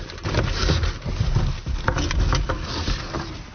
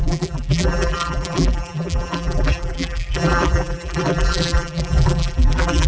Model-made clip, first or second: second